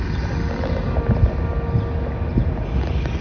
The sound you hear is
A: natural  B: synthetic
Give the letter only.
A